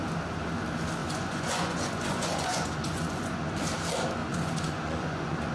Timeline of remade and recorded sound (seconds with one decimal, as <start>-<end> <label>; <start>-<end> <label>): 0.0-1.0 recorded; 1.0-3.4 remade; 3.4-4.2 recorded; 4.2-5.5 remade